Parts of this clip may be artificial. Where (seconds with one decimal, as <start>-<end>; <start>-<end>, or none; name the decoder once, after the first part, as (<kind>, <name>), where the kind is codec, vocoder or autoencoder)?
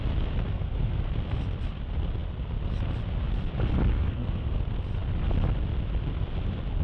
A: 0.5-1.1 (codec, SNAC); 3.9-4.6